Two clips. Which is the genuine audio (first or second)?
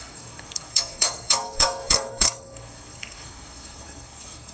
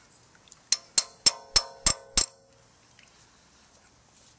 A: second